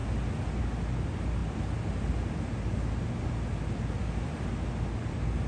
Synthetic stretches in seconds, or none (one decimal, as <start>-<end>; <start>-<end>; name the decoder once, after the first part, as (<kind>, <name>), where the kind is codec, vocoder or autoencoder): none